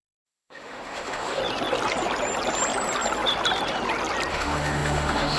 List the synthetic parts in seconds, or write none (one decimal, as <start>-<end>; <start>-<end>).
0.0-1.4; 4.3-5.4